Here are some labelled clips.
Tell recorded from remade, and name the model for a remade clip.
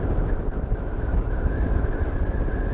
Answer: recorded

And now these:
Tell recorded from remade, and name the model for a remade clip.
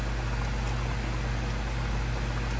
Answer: recorded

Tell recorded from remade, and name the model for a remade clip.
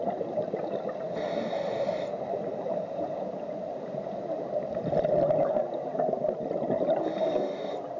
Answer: recorded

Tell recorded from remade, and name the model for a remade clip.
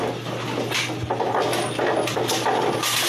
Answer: recorded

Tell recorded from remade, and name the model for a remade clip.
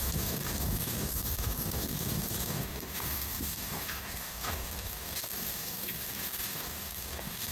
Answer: remade, codec, DAC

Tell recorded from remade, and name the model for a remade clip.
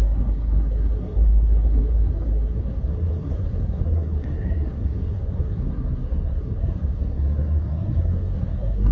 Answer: remade, codec, SNAC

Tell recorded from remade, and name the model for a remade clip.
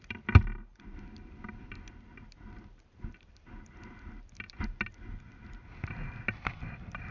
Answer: recorded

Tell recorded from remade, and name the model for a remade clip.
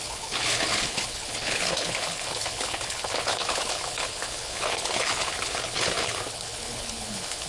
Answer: remade, codec, HILCodec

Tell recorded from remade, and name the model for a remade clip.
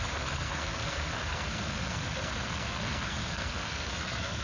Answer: remade, codec, SNAC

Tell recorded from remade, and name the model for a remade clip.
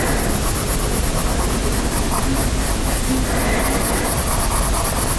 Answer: recorded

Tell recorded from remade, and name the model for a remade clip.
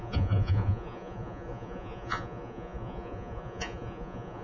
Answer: remade, vocoder, Vocos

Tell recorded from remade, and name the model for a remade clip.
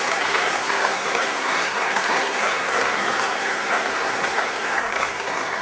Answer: remade, codec, SNAC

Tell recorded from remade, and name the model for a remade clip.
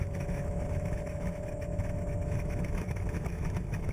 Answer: remade, autoencoder, DAC-VAE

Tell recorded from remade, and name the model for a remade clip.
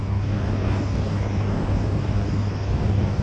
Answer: remade, codec, DAC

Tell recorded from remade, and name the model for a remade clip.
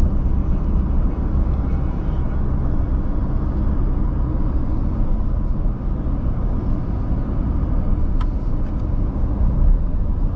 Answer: recorded